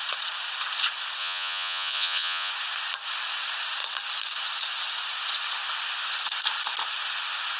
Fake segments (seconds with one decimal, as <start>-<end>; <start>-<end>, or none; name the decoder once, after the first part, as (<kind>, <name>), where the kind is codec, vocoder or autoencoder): 1.2-2.5 (vocoder, Vocos)